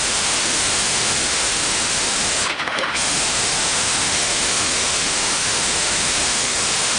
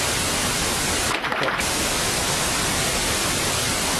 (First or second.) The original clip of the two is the second